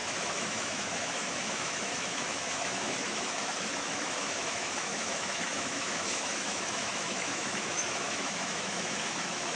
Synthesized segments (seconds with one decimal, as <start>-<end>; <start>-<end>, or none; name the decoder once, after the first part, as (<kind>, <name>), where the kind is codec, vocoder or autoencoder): 0.0-9.6 (autoencoder, DAC-VAE)